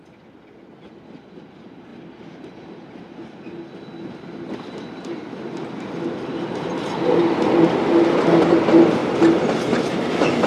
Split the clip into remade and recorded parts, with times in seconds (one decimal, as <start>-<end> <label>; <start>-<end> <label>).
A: 0.0-9.0 recorded; 9.0-10.1 remade; 10.1-10.5 recorded